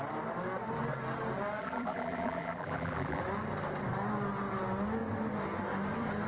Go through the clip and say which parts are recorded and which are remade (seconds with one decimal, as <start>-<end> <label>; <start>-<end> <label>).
0.0-1.6 recorded; 1.6-3.2 remade; 3.2-6.3 recorded